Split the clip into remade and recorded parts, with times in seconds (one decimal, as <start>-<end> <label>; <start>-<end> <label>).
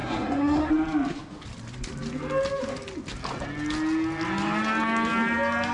0.0-0.7 remade; 0.7-5.7 recorded